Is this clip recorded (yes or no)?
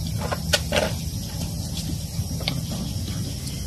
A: yes